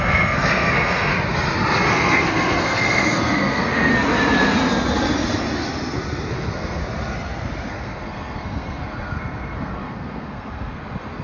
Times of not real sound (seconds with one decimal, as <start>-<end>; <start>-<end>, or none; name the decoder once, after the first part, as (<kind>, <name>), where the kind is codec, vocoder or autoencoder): 0.0-1.1 (codec, SNAC); 1.9-3.9; 6.3-6.8; 7.7-11.2